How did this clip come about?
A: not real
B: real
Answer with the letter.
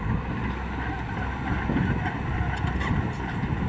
B